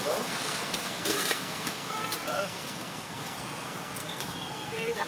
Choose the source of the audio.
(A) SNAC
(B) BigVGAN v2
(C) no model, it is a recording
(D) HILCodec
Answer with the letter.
A